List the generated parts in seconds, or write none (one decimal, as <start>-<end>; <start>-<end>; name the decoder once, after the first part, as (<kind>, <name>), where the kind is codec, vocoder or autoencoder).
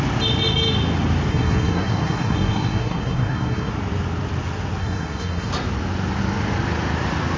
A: 1.3-3.7 (codec, SNAC); 4.8-5.5